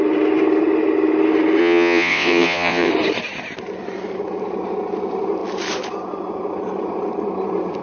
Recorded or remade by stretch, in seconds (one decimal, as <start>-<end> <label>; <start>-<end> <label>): 0.0-1.6 recorded; 1.6-2.9 remade; 2.9-7.8 recorded